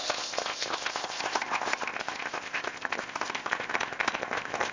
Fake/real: fake